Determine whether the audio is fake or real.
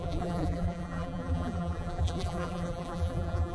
fake